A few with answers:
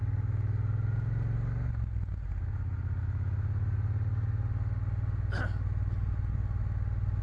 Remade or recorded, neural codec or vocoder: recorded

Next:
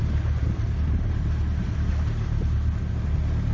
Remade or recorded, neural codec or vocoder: recorded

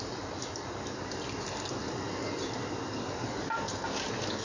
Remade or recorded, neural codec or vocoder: recorded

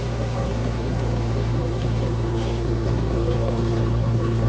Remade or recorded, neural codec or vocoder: remade, codec, SNAC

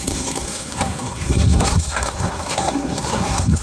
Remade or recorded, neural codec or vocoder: remade, codec, SNAC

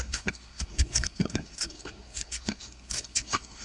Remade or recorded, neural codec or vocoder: remade, codec, SNAC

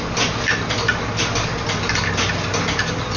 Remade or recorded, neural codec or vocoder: recorded